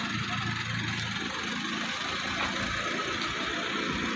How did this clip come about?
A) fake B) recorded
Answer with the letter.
B